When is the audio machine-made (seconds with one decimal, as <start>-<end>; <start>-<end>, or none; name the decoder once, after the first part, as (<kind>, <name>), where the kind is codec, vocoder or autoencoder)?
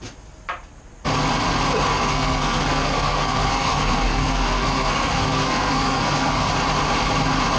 1.9-6.5 (codec, SNAC)